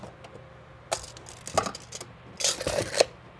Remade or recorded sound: recorded